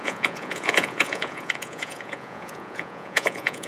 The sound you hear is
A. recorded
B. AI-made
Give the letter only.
B